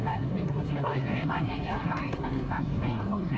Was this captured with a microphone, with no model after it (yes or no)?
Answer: no